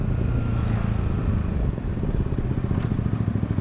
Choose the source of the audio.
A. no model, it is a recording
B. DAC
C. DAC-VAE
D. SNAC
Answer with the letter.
A